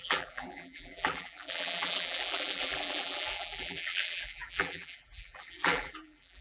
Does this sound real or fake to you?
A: fake